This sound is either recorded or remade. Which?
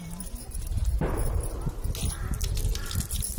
recorded